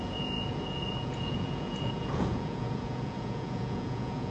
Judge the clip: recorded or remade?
remade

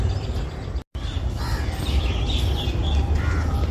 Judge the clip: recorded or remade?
recorded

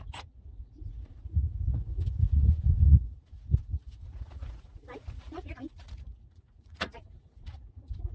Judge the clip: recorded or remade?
remade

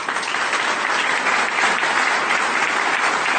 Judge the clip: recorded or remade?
recorded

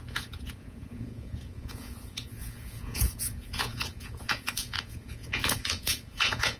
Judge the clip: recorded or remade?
remade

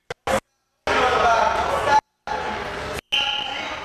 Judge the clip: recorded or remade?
recorded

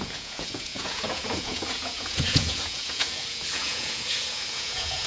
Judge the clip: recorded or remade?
remade